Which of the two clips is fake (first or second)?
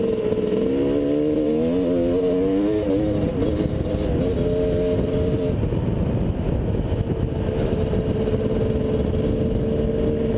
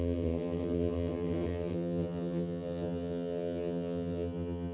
second